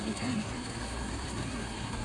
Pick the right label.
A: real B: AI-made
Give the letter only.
B